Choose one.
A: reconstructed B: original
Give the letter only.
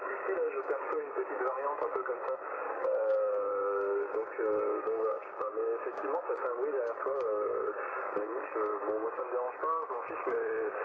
A